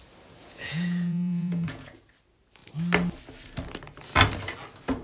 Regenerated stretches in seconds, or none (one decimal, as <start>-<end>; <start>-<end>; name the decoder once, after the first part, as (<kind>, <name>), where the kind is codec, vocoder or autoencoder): 0.4-2.0 (vocoder, Vocos)